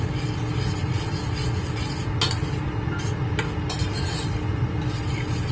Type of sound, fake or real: real